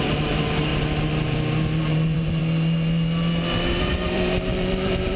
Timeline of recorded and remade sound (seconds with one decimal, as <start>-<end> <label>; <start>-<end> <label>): 0.0-0.7 remade; 0.7-1.9 recorded; 1.9-2.4 remade; 2.4-3.8 recorded; 3.8-5.2 remade